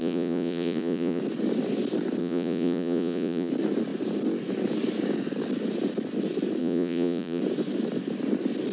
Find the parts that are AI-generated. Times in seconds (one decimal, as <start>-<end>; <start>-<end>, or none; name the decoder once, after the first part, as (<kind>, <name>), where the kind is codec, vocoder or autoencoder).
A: 0.0-1.2 (vocoder, Vocos); 2.2-3.5; 6.6-7.4